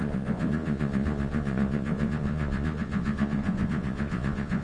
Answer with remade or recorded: remade